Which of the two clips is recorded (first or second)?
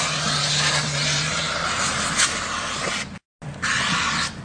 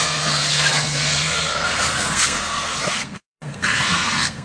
first